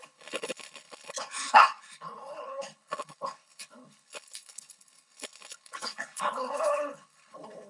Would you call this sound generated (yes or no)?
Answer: yes